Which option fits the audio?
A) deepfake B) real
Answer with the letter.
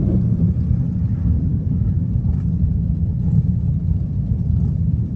B